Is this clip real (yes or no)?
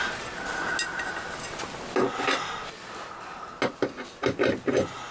yes